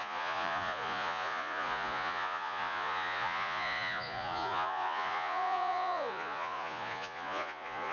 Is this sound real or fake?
fake